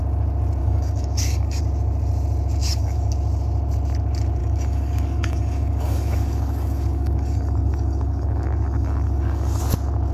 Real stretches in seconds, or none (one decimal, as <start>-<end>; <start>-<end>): 0.0-0.6; 1.6-2.6; 3.1-4.4; 9.6-10.1